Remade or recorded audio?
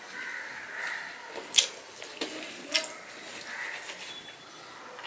recorded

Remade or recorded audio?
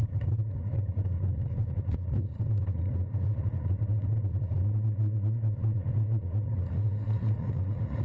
remade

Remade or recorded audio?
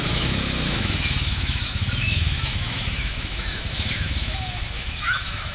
remade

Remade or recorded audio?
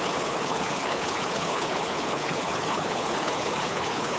remade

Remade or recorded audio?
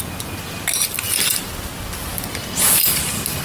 recorded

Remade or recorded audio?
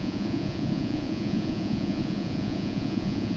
remade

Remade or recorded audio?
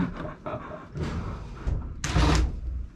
recorded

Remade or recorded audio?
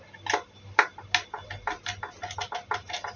recorded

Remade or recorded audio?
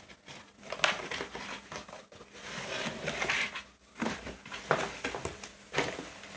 recorded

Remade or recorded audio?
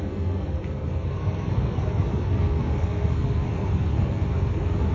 remade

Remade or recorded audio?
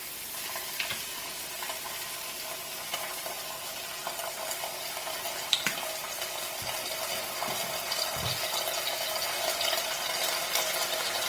recorded